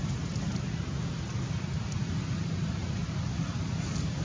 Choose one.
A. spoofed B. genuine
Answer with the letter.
B